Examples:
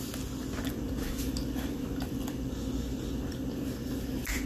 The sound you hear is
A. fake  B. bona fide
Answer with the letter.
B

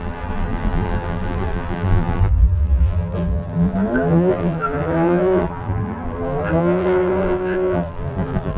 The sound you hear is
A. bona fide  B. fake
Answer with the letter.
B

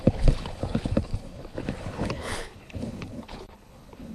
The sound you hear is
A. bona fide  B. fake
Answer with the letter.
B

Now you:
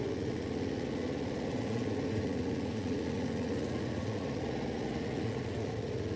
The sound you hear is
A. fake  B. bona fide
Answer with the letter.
A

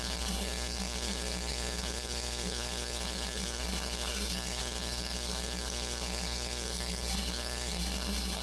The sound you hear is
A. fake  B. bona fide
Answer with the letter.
A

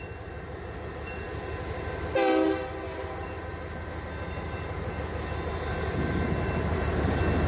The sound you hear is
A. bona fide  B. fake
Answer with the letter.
A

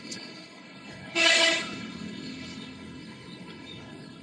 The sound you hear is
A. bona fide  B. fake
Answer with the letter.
B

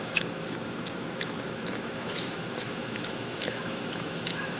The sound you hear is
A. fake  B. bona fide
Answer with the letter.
A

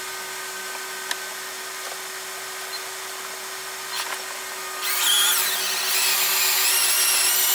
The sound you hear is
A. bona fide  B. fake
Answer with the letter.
A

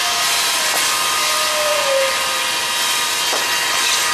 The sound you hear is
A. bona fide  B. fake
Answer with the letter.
B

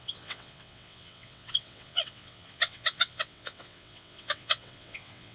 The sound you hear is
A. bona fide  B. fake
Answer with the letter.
B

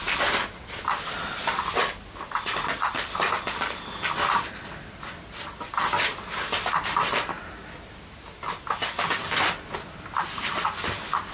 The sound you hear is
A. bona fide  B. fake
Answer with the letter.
A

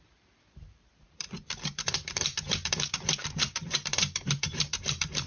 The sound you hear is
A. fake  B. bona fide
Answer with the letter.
A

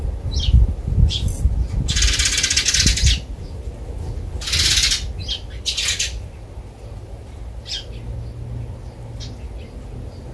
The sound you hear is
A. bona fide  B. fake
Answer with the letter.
A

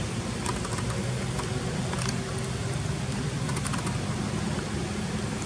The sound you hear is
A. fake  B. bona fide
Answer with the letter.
B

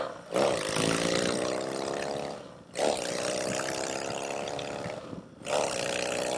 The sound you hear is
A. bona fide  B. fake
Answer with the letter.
B